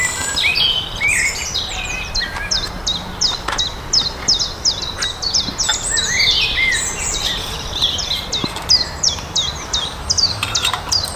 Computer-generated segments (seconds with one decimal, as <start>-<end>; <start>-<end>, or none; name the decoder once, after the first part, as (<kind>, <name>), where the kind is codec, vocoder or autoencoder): 0.0-3.7 (vocoder, BigVGAN v2); 6.3-11.2